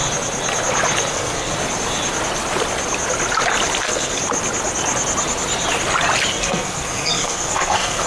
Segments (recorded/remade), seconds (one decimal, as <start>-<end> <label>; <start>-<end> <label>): 0.0-1.1 recorded; 1.1-1.5 remade; 1.5-3.8 recorded; 3.8-4.2 remade; 4.2-6.3 recorded; 6.3-8.1 remade